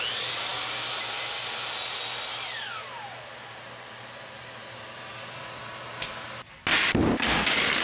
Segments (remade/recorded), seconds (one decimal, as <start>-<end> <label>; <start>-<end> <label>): 0.0-7.8 recorded